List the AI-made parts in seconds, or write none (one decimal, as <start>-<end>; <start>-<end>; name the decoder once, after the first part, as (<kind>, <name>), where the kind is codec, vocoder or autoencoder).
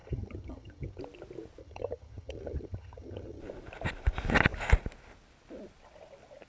0.0-1.0 (vocoder, HiFi-GAN); 1.6-3.4